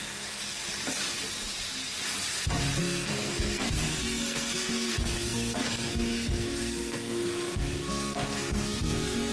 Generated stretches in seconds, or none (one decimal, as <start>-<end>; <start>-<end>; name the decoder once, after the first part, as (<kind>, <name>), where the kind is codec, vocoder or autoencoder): 0.0-0.6 (codec, SNAC); 2.8-9.3